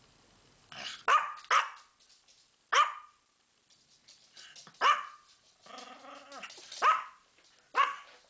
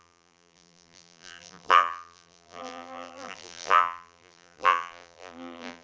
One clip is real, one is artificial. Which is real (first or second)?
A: first